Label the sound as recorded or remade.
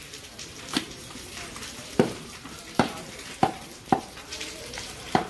remade